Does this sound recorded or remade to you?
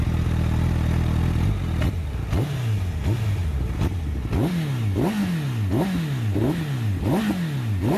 recorded